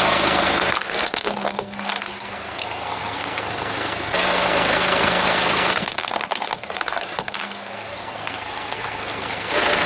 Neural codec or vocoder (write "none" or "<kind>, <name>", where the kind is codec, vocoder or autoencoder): codec, SNAC